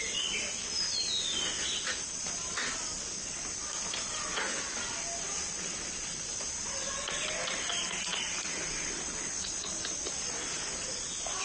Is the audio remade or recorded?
recorded